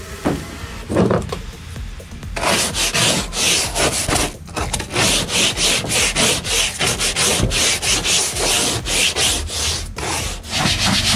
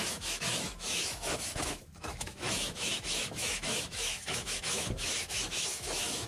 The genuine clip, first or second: first